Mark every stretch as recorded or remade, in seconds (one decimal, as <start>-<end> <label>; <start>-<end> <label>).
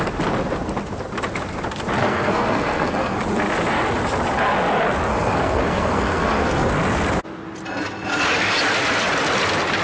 0.0-2.0 recorded; 2.0-3.2 remade; 3.2-5.1 recorded; 5.1-6.7 remade; 6.7-9.8 recorded